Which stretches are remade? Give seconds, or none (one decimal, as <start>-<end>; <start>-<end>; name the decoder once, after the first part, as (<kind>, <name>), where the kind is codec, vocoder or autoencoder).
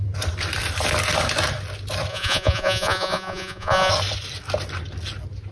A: 2.1-3.9 (vocoder, Vocos)